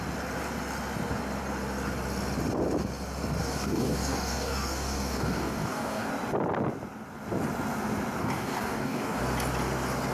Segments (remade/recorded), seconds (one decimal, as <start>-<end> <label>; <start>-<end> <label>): 0.0-3.4 recorded; 3.4-6.1 remade; 6.1-8.2 recorded; 8.2-9.2 remade; 9.2-10.1 recorded